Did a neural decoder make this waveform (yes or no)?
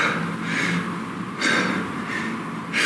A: no